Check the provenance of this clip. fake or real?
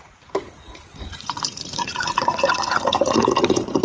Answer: fake